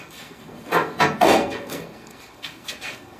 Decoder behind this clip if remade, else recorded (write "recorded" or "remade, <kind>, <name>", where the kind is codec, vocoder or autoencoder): remade, codec, SNAC